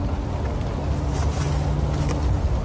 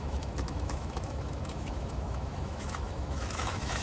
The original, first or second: first